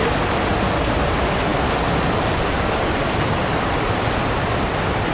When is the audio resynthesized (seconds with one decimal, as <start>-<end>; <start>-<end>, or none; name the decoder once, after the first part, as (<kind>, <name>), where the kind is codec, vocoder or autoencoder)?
none